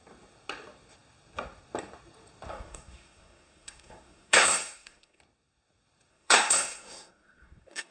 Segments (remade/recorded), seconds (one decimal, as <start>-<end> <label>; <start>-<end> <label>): 0.0-2.5 recorded; 2.5-5.2 remade; 5.2-6.1 recorded; 6.1-7.9 remade